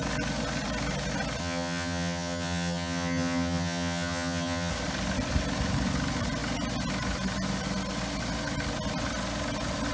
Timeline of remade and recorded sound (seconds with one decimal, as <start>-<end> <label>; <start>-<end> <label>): 0.0-1.4 recorded; 1.4-4.7 remade; 4.7-9.9 recorded

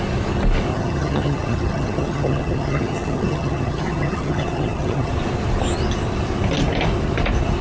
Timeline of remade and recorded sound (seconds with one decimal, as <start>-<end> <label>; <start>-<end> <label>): 0.0-0.7 recorded; 0.7-5.1 remade; 5.1-7.6 recorded

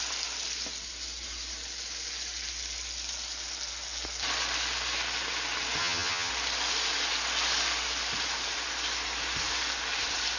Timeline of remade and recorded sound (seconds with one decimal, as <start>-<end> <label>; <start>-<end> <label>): 0.0-5.8 recorded; 5.8-6.3 remade; 6.3-10.4 recorded

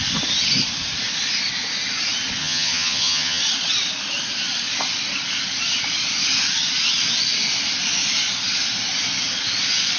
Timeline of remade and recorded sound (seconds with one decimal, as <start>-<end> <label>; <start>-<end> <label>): 0.0-2.4 recorded; 2.4-3.4 remade; 3.4-10.0 recorded

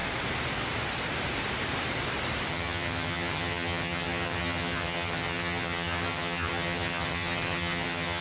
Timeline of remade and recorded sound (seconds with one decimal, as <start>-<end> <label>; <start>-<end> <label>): 0.0-2.5 recorded; 2.5-8.2 remade